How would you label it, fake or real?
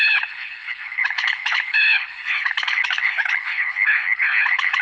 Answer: fake